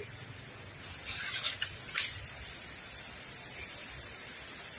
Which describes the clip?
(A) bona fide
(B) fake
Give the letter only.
A